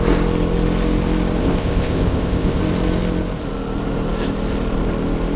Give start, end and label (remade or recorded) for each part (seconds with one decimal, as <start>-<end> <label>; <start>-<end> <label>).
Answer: 0.0-1.4 recorded; 1.4-2.6 remade; 2.6-5.4 recorded

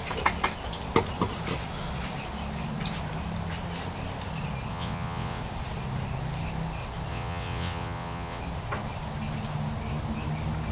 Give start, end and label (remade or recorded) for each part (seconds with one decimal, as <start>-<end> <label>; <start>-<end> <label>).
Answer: 0.0-4.7 recorded; 4.7-5.4 remade; 5.4-7.1 recorded; 7.1-8.4 remade; 8.4-10.7 recorded

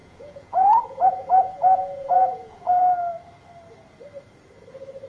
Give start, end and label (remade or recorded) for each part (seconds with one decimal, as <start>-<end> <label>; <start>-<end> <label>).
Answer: 0.0-2.8 remade; 2.8-5.1 recorded